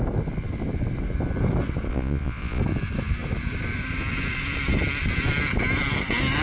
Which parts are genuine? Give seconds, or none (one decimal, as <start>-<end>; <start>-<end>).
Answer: 0.0-1.9; 2.6-6.4

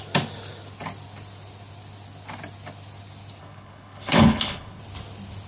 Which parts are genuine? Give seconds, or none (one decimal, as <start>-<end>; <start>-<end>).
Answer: 0.0-3.4; 4.8-5.5

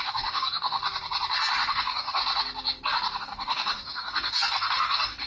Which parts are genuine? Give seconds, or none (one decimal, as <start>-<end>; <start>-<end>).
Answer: 0.8-1.7; 2.2-3.2

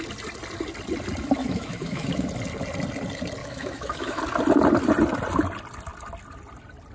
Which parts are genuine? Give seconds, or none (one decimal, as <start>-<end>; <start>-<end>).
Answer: 0.0-1.4; 2.3-3.4; 4.2-6.9

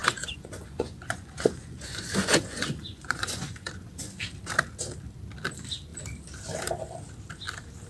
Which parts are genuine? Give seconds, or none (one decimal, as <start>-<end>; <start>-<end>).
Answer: 4.1-7.9

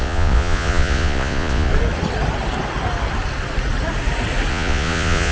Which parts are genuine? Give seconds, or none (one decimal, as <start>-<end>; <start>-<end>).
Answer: 1.7-4.5